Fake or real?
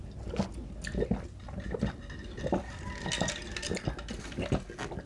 real